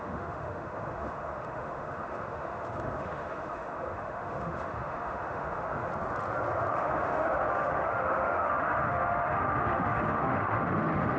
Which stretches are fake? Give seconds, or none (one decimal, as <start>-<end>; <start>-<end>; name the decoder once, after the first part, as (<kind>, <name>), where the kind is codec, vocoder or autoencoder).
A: 0.0-5.9 (autoencoder, DAC-VAE); 6.7-11.2

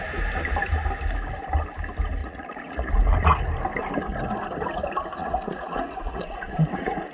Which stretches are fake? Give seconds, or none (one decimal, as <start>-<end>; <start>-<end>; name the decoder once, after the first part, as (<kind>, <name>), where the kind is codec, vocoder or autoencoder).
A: 2.2-2.9 (vocoder, Vocos); 5.2-7.1

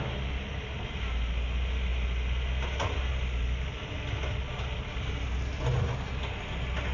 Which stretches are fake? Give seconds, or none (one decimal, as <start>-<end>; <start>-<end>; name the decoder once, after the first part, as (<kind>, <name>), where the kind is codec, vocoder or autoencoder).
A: none

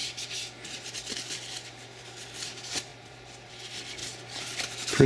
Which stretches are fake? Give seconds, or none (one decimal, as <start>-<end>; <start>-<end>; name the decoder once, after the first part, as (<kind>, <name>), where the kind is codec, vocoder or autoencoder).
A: 0.0-2.0 (vocoder, BigVGAN v2); 2.9-3.5

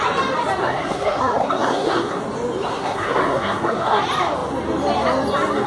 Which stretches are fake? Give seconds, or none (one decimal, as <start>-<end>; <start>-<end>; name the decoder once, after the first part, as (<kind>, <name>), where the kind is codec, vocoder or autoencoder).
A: 0.6-2.2 (codec, SNAC); 2.7-4.0

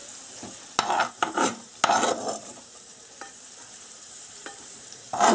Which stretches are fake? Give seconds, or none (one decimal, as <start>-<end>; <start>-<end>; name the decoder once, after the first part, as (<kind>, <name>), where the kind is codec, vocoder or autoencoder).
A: 1.1-1.7 (vocoder, BigVGAN v2); 2.4-5.3